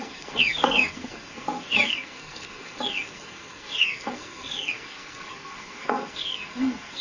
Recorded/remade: remade